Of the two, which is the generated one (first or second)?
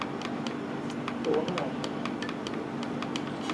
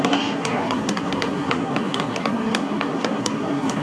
second